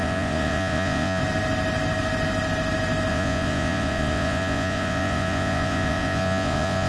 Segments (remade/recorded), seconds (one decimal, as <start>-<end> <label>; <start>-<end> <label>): 0.0-1.2 remade; 1.2-3.1 recorded; 3.1-6.9 remade